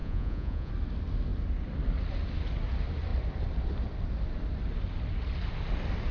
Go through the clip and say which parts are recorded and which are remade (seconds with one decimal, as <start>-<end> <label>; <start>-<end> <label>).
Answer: 0.0-0.7 remade; 0.7-6.1 recorded